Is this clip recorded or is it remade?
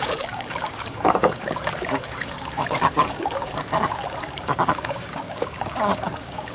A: remade